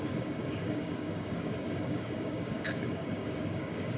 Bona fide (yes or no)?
no